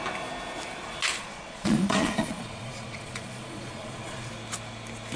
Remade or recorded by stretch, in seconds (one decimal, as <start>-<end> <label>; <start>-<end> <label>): 0.0-1.2 recorded; 1.2-4.3 remade; 4.3-5.2 recorded